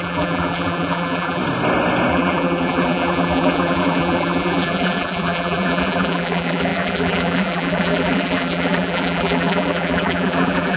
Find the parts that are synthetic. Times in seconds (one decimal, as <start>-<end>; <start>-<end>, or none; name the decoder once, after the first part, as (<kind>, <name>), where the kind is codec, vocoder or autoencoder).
0.0-1.4 (vocoder, BigVGAN v2); 2.1-10.8